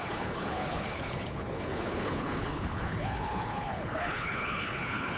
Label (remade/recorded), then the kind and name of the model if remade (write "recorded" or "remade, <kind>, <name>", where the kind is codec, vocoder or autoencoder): remade, codec, HILCodec